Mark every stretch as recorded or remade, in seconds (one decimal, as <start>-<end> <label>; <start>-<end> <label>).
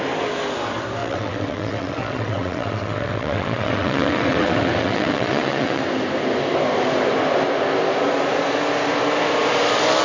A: 0.0-1.0 recorded; 1.0-5.8 remade; 5.8-10.0 recorded